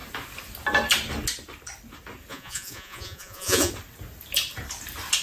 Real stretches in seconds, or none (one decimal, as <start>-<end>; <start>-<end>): 0.0-2.3; 3.7-5.2